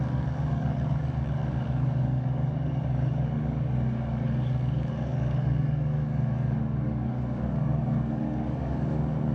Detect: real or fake fake